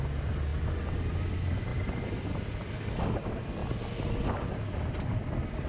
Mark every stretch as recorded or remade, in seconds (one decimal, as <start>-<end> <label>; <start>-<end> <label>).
0.0-5.7 recorded